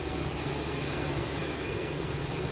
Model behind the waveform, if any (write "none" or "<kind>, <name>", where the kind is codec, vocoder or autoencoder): codec, SNAC